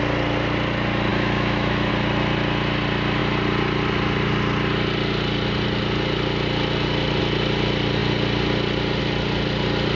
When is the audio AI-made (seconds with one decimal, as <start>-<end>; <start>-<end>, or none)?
1.1-1.9